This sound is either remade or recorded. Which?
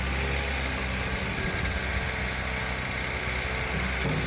recorded